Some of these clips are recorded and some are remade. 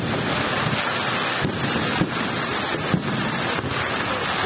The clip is recorded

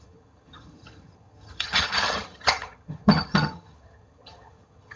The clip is remade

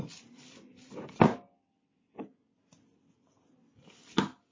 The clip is recorded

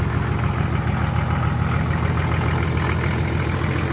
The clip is recorded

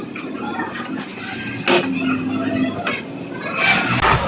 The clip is recorded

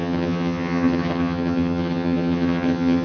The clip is remade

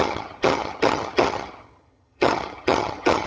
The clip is remade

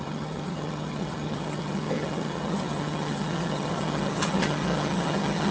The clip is remade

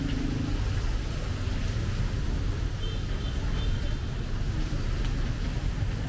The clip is recorded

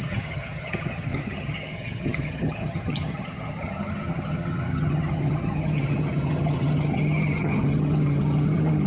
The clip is remade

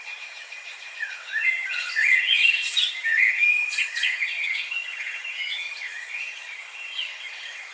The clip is remade